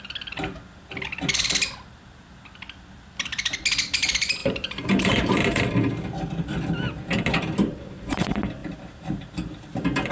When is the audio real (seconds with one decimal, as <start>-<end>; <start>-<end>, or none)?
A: 0.0-4.4; 5.7-8.6; 9.3-10.1

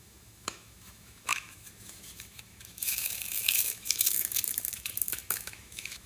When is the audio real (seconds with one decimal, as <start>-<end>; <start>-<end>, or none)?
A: none

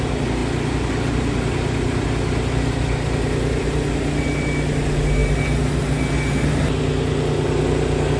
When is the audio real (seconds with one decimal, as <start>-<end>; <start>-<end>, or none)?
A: 0.0-8.2

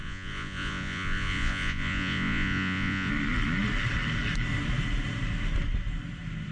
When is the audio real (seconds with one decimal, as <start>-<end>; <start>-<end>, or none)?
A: 3.1-6.5

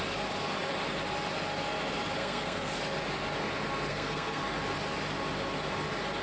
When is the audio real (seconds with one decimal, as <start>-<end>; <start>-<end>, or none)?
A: 0.0-2.2; 2.8-3.9; 4.4-6.2

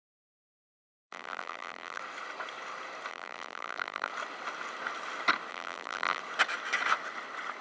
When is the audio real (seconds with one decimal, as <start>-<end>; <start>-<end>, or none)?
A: 0.0-0.6; 2.0-3.1; 4.1-5.5; 6.2-7.6

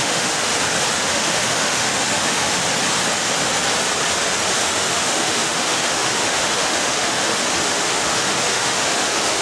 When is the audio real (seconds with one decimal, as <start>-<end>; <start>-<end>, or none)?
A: 0.5-1.1; 2.6-4.6